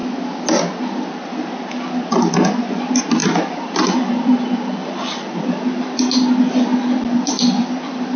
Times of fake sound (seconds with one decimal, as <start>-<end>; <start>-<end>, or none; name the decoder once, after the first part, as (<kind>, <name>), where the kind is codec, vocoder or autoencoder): 3.2-6.0 (vocoder, BigVGAN v2); 6.7-8.2